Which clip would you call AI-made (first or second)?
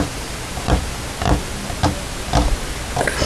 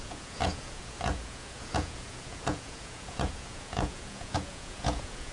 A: second